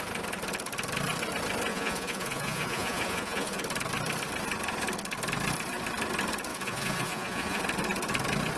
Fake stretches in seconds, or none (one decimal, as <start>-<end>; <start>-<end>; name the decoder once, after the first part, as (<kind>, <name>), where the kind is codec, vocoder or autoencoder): 1.7-3.6 (vocoder, Vocos); 6.5-7.6